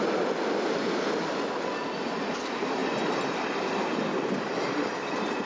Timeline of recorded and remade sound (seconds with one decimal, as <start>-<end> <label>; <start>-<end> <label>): 0.0-5.5 recorded